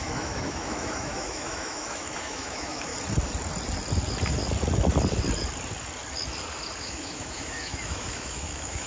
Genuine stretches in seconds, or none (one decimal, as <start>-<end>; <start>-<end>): 2.9-6.8